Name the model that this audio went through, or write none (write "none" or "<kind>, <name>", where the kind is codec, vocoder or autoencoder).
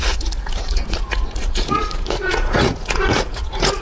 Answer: vocoder, Vocos